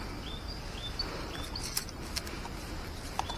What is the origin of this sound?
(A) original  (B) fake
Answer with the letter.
A